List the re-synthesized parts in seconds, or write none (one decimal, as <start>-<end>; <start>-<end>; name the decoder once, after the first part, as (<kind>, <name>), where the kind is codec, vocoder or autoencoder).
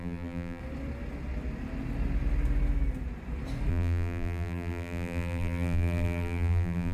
0.0-0.6 (vocoder, BigVGAN v2); 3.7-6.9